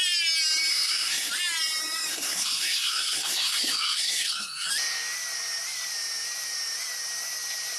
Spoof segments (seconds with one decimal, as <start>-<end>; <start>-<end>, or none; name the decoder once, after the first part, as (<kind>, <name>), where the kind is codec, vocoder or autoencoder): 0.7-1.3 (codec, SNAC); 2.1-4.7